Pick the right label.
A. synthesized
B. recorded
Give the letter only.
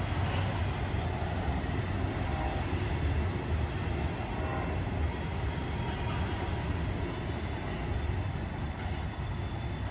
B